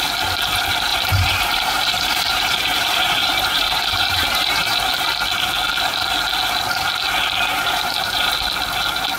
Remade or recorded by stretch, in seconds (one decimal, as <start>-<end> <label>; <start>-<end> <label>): 0.0-0.9 recorded; 0.9-4.8 remade; 4.8-7.5 recorded; 7.5-8.3 remade; 8.3-9.2 recorded